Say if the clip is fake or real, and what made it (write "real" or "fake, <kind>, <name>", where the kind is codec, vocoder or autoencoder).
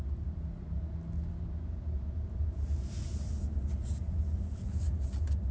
real